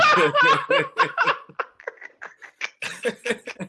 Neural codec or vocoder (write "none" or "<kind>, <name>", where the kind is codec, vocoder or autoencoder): none